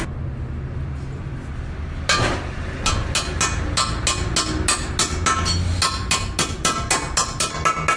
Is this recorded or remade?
recorded